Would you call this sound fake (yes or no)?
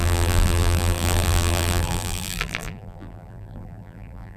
yes